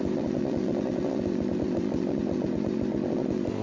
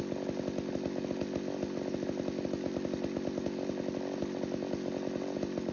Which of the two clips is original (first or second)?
second